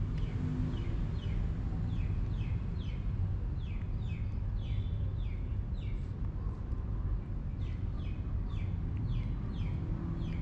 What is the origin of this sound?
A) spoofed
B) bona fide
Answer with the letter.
B